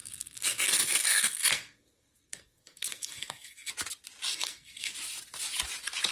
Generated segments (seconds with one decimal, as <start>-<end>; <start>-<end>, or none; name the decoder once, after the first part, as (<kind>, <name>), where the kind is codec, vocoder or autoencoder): 0.0-3.7 (codec, SNAC); 4.3-4.9